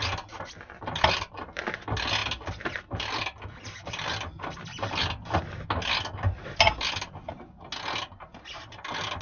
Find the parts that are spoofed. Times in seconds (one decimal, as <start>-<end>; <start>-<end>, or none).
none